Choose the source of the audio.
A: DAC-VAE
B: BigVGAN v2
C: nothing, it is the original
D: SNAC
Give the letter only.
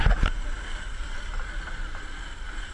C